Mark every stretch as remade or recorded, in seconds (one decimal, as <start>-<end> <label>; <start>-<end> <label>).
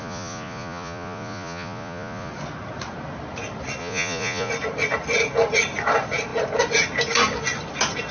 0.0-2.3 remade; 2.3-3.8 recorded; 3.8-4.5 remade; 4.5-8.1 recorded